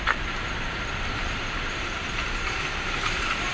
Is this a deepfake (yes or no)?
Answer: yes